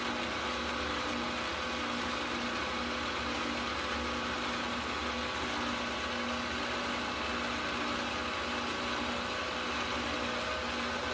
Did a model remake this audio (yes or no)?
no